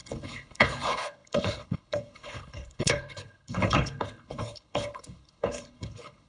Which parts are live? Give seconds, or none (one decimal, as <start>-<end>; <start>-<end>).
none